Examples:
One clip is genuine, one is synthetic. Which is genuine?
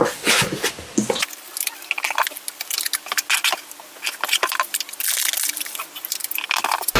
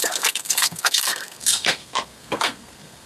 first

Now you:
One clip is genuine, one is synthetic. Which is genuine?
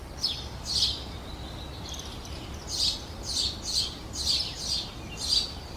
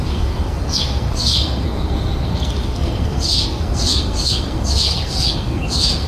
first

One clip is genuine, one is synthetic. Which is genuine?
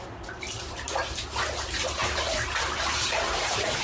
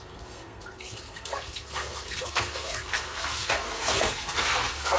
first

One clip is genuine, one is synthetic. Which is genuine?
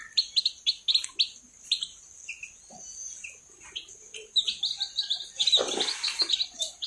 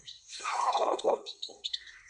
first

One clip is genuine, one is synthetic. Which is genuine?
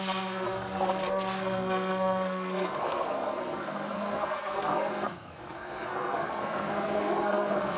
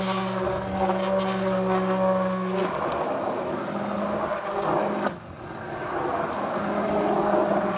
second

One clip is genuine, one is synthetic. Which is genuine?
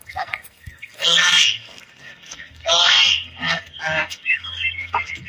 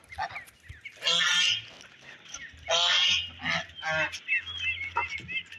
second